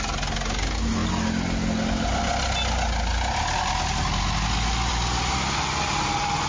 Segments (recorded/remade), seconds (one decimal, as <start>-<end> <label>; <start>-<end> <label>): 0.0-6.5 recorded